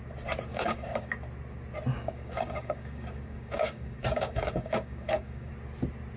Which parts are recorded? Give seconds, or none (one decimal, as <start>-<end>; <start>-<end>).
0.0-0.5; 1.1-1.9; 5.5-6.2